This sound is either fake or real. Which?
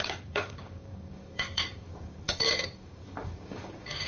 fake